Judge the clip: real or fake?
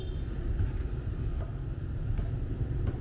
real